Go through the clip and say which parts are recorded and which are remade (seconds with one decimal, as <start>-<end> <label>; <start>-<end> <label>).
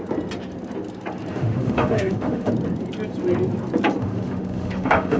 0.0-1.3 recorded; 1.3-2.5 remade; 2.5-4.0 recorded; 4.0-5.2 remade